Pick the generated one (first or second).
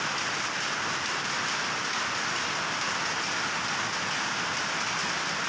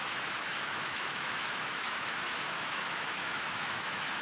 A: second